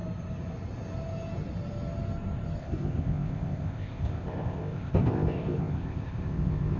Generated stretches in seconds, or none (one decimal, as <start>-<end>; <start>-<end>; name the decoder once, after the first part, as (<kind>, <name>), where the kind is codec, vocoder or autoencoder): 2.6-6.8 (codec, ZipCodec)